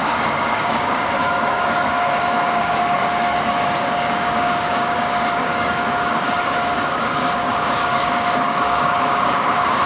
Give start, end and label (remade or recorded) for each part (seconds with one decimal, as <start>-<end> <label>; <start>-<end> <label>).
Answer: 0.0-9.9 remade